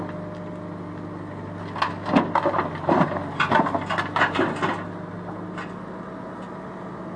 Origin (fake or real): real